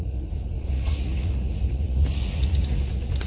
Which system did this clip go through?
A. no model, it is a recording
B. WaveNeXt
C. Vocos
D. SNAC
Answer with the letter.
C